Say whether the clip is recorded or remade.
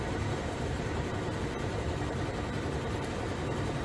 remade